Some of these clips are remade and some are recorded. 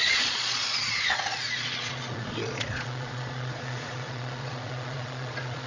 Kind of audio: remade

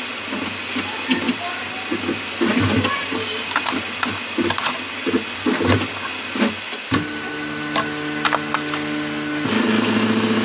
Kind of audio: recorded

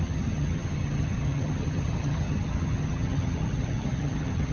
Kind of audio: remade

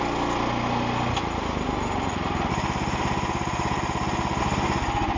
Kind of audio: recorded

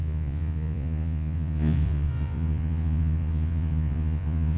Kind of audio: remade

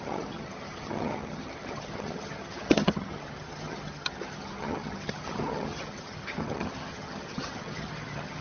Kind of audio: remade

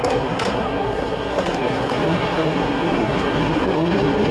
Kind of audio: remade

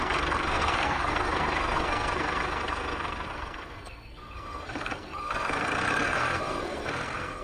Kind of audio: remade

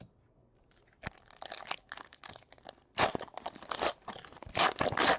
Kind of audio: recorded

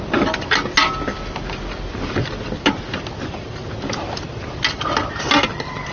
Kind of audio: recorded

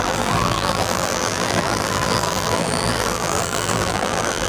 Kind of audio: remade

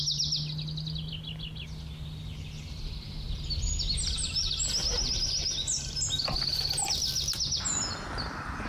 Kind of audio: recorded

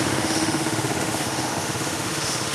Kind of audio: remade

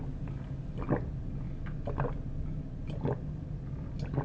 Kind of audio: recorded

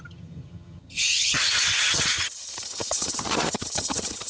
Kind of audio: remade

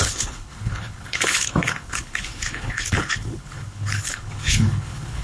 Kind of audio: remade